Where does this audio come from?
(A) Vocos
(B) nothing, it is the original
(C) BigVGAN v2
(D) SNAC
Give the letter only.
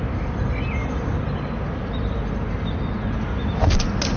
B